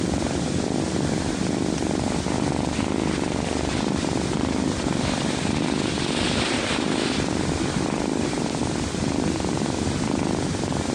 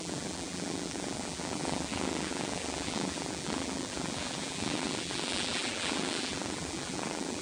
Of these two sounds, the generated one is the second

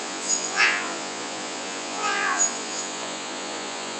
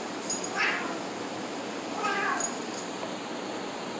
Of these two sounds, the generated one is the first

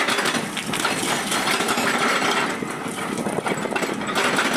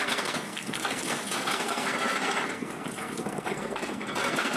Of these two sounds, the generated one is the second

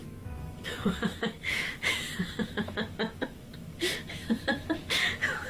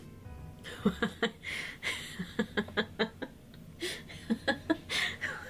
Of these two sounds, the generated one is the first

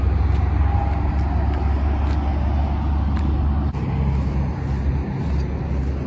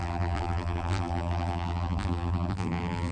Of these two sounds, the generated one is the second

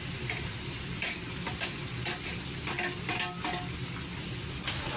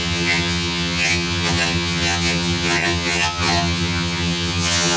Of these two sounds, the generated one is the second